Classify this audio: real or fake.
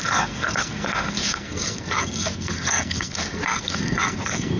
fake